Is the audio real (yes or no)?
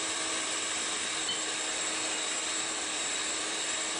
no